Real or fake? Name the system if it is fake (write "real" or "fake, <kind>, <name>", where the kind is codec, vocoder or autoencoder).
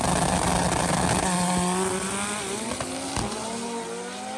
real